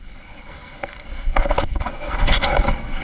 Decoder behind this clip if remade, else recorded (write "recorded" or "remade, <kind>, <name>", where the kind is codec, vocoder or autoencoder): remade, codec, SNAC